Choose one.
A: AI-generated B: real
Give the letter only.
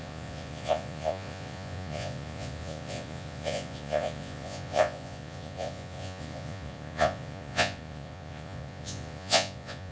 A